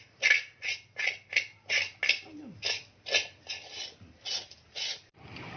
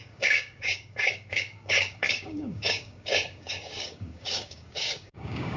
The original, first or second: first